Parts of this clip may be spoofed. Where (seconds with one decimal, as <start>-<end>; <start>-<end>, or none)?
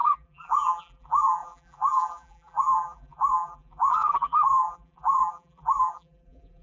0.0-6.6